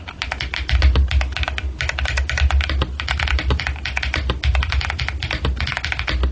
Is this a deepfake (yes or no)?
no